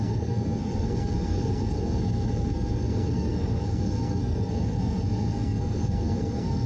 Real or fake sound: fake